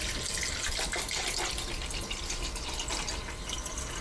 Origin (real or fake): real